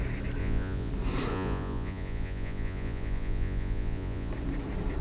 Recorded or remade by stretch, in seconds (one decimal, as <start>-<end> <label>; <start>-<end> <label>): 0.0-0.4 recorded; 0.4-0.9 remade; 0.9-1.3 recorded; 1.3-4.3 remade; 4.3-5.0 recorded